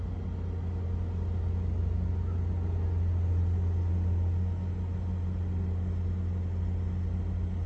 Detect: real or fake real